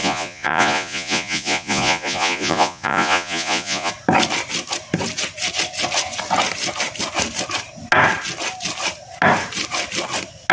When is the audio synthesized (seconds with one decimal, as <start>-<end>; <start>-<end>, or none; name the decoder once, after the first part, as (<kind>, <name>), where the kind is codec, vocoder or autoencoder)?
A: 0.0-3.9 (vocoder, Vocos)